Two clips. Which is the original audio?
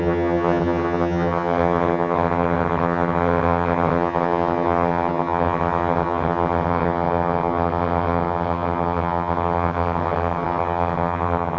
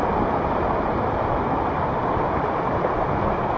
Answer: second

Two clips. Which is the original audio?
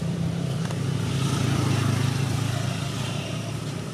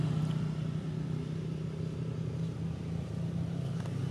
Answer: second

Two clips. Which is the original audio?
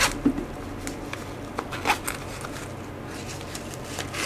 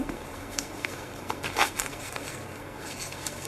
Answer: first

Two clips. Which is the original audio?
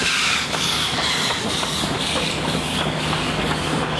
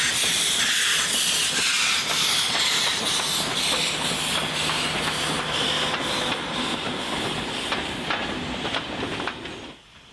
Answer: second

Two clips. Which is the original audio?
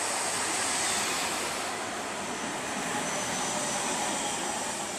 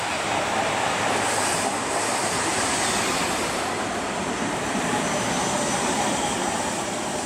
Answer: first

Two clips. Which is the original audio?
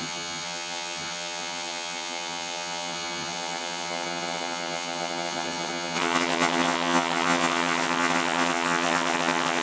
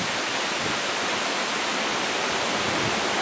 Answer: second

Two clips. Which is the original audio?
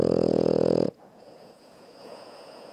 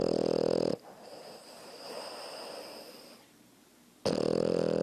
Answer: second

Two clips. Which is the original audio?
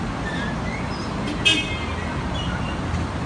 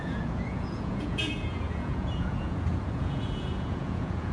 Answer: first